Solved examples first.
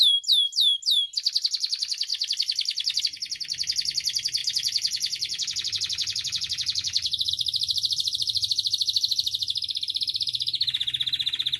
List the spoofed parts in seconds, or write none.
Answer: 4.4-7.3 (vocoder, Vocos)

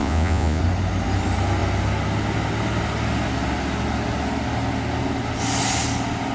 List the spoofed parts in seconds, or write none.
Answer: 0.0-0.6 (vocoder, Vocos)

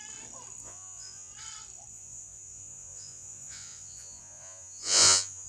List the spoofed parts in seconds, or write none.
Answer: 0.6-1.3 (vocoder, Vocos); 1.9-5.5

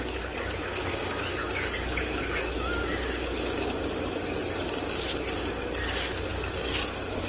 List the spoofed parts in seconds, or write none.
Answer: 0.0-4.2 (codec, DAC); 5.5-7.3

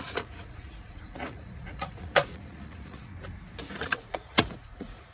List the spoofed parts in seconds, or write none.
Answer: 0.0-3.1 (vocoder, Vocos); 3.7-5.1

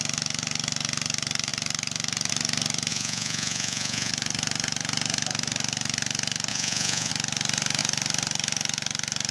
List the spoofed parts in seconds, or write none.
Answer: 2.9-4.1 (vocoder, Vocos); 6.5-7.1

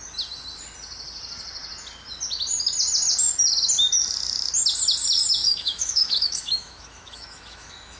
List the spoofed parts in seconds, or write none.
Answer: 5.4-8.0 (autoencoder, DAC-VAE)